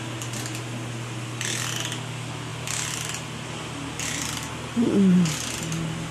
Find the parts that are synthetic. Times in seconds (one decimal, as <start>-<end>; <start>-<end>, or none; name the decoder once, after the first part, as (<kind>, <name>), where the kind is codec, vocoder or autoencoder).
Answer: none